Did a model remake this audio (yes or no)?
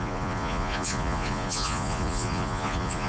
yes